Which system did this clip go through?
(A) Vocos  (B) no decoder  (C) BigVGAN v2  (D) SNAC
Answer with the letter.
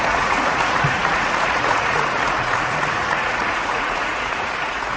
A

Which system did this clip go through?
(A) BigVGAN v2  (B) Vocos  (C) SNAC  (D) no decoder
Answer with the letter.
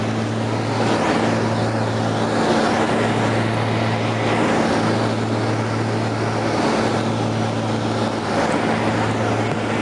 D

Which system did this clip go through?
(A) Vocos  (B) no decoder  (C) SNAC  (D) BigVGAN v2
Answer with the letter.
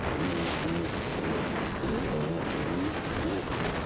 B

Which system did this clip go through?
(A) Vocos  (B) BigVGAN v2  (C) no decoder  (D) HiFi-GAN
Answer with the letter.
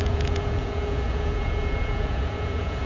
A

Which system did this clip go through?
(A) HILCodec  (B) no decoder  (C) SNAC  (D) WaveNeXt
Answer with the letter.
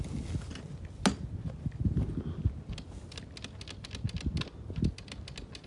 B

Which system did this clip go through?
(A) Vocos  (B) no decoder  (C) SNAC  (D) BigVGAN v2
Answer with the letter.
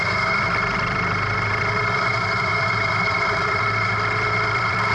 D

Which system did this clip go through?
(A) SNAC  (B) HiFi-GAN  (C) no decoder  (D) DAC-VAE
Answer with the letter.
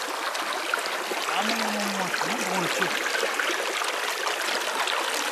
C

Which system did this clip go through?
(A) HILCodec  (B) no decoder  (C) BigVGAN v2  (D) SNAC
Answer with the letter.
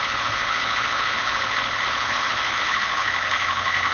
A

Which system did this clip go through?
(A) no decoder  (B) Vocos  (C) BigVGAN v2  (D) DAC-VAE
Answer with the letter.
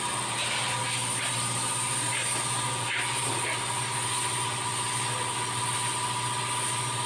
A